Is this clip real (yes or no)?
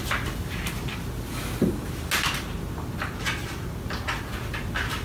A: yes